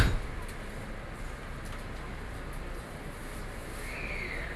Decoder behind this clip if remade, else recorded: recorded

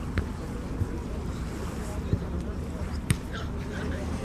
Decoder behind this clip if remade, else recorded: remade, vocoder, BigVGAN v2